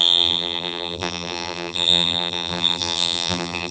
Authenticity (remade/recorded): remade